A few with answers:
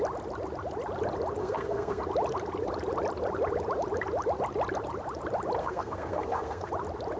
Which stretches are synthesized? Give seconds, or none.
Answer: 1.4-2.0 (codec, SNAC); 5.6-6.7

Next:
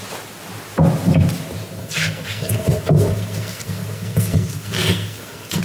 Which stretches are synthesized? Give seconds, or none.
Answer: 1.8-5.6 (codec, SNAC)

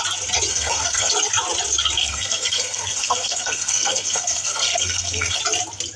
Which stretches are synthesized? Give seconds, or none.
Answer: 0.5-1.1 (codec, SNAC); 2.0-5.4

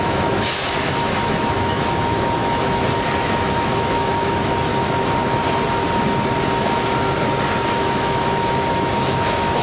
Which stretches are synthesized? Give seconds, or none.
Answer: 0.0-4.7 (autoencoder, DAC-VAE); 7.7-9.6